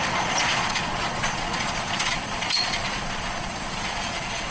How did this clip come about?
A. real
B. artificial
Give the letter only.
B